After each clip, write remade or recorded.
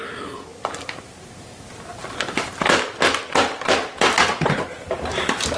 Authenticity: recorded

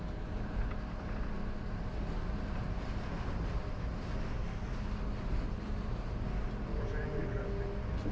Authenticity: recorded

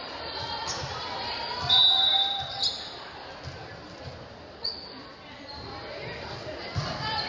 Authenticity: recorded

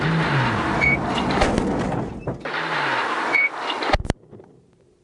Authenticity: recorded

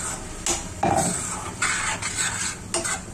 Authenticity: recorded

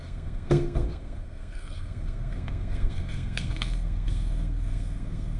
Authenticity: remade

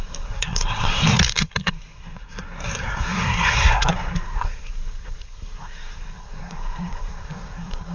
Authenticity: remade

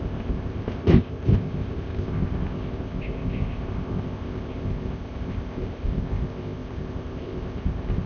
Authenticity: remade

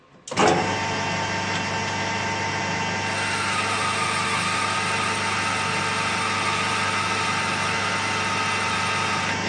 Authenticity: recorded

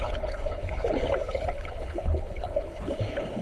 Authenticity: remade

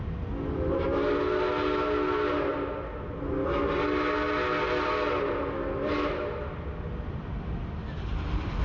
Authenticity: recorded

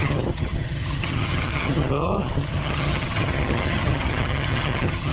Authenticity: remade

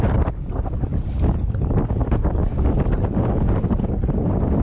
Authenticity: recorded